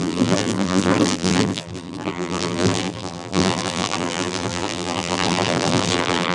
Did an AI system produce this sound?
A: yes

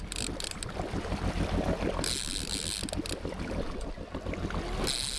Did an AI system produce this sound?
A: no